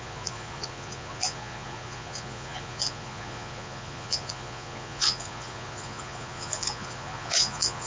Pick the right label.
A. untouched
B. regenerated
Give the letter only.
B